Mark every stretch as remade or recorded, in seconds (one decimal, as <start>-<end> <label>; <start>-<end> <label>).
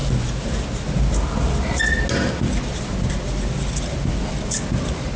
0.0-5.2 recorded